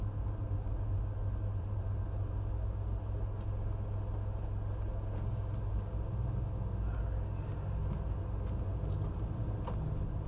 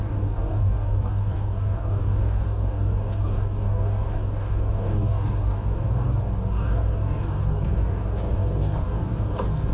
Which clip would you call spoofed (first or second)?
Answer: second